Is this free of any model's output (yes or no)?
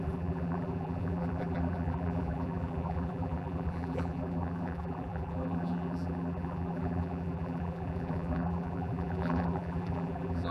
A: no